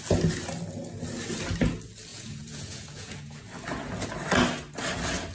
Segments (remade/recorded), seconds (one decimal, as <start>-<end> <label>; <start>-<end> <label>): 0.0-2.1 recorded; 2.1-3.4 remade; 3.4-5.3 recorded